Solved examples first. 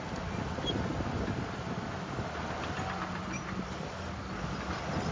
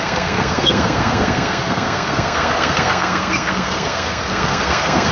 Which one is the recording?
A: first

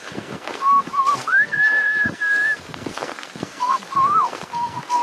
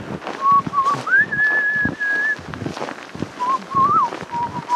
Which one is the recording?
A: second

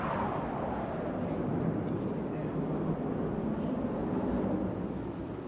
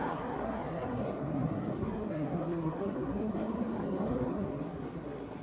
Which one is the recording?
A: first